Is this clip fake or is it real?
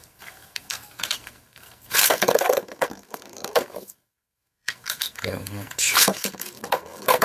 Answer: fake